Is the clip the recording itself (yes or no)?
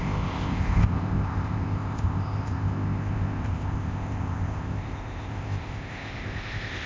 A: no